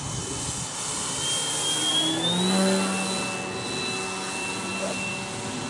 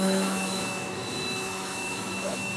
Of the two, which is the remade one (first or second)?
second